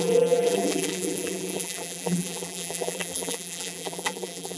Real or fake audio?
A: fake